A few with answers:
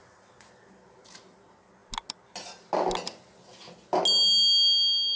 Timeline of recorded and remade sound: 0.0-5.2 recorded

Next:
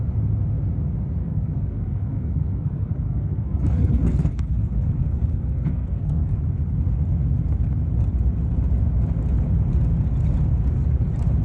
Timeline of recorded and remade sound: 0.0-1.2 recorded; 1.2-6.4 remade; 6.4-11.4 recorded

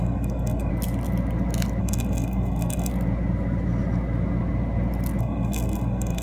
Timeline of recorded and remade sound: 0.0-0.7 remade; 0.7-1.8 recorded; 1.8-2.9 remade; 2.9-5.2 recorded; 5.2-6.2 remade

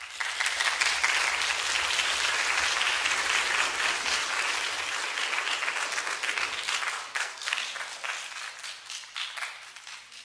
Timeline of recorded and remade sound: 0.0-7.1 recorded; 7.1-7.6 remade; 7.6-10.2 recorded